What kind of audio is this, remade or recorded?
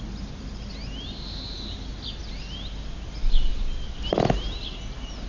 recorded